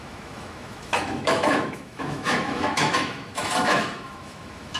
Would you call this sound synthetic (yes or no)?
yes